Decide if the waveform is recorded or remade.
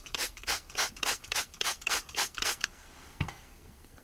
remade